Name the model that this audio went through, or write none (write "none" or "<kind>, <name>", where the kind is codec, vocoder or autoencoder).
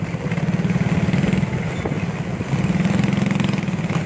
none